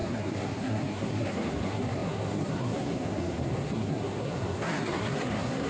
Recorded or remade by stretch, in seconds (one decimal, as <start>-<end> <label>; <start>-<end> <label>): 0.0-5.7 remade